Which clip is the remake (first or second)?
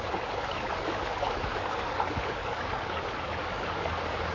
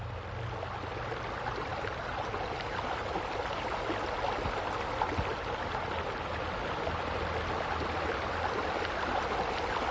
first